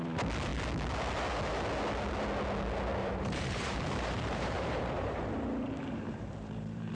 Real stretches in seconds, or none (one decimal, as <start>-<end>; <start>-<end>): 0.0-3.0